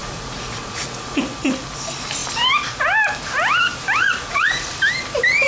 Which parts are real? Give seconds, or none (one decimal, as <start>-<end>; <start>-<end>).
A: 1.2-4.0; 4.7-5.5